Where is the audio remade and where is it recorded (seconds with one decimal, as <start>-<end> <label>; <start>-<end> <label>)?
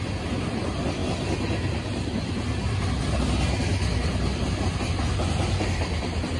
0.0-6.4 recorded